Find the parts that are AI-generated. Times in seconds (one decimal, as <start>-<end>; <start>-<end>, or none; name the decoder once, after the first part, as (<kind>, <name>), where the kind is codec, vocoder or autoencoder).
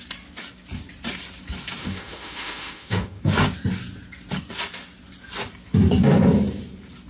1.8-3.2 (autoencoder, DAC-VAE)